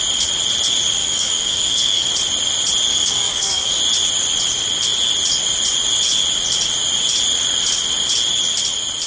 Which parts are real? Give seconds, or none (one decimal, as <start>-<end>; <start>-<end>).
0.0-1.0; 2.1-2.9; 3.8-9.1